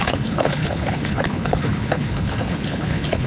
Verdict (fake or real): fake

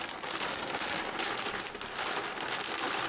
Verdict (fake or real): real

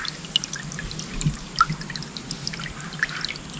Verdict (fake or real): real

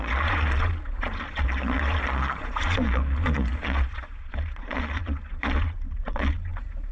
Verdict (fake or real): fake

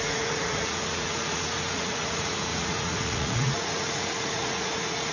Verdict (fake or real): fake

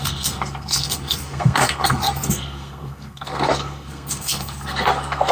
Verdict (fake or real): fake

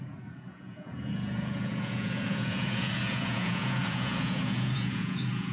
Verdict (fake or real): fake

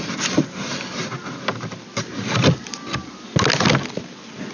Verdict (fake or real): real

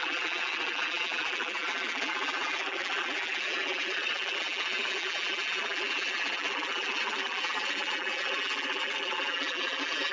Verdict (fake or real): fake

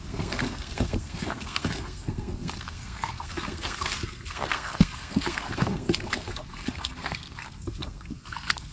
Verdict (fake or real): fake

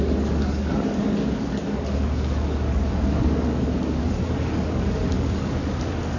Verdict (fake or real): fake